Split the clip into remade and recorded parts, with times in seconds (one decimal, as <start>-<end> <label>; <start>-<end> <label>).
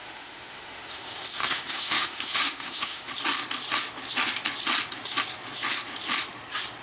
0.0-3.1 remade; 3.1-6.8 recorded